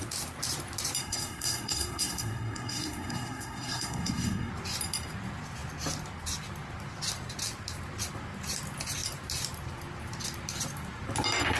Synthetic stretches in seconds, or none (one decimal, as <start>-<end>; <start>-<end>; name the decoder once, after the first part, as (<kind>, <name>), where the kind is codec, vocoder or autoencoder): 1.0-4.5 (codec, SNAC)